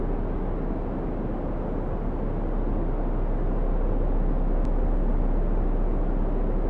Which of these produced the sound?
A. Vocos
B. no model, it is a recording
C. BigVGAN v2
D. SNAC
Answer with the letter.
B